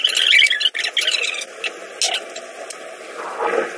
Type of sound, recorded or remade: recorded